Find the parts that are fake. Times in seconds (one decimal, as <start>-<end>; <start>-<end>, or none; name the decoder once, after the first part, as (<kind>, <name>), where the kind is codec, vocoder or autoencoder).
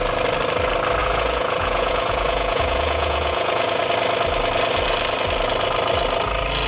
1.0-3.8 (vocoder, Vocos)